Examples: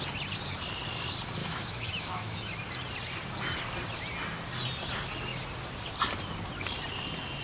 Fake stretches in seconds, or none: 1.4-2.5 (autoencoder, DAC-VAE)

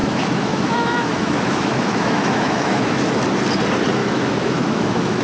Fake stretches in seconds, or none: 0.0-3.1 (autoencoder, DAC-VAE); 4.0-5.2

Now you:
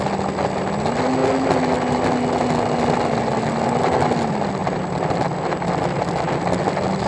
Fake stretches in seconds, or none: none

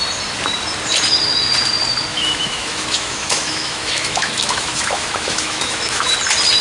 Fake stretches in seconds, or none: 2.1-6.1 (autoencoder, DAC-VAE)

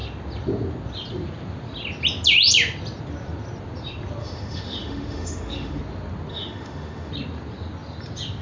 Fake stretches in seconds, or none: 4.2-5.8 (autoencoder, DAC-VAE); 6.3-7.1